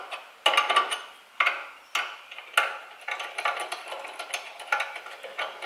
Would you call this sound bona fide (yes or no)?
yes